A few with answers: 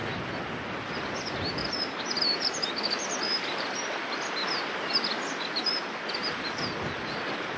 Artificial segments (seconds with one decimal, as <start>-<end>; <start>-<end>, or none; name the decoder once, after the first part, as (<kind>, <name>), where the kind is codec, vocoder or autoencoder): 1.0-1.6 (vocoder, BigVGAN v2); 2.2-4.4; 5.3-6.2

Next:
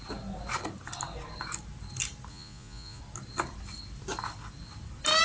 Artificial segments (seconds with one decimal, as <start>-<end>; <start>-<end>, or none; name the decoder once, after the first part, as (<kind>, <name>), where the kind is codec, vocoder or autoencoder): 2.3-3.0 (vocoder, Vocos)

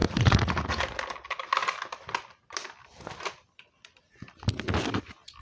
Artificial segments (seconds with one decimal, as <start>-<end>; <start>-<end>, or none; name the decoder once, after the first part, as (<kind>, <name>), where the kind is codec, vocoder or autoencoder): 0.0-0.8 (vocoder, Vocos)

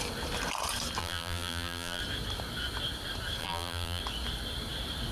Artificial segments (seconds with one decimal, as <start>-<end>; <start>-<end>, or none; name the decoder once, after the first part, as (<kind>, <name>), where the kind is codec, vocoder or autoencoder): 1.0-2.0 (vocoder, BigVGAN v2); 3.4-4.0

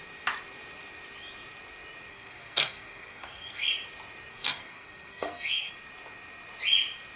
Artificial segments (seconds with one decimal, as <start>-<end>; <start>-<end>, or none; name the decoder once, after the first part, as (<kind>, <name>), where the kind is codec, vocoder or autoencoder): 2.1-3.7 (codec, SNAC); 4.3-5.7

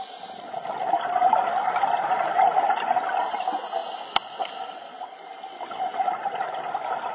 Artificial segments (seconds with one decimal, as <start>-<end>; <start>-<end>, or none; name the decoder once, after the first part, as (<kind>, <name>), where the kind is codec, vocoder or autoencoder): none

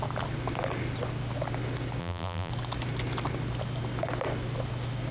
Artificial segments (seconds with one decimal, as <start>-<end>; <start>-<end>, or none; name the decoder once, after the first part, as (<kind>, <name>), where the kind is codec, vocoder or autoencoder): 2.0-2.5 (vocoder, BigVGAN v2)

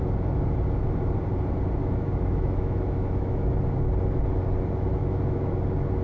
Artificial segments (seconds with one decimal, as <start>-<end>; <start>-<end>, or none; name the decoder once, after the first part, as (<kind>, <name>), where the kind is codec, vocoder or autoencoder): 1.8-3.9 (autoencoder, DAC-VAE); 5.0-5.6